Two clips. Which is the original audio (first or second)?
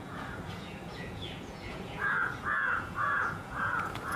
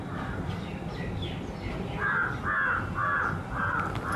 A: second